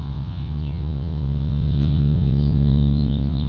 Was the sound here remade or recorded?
remade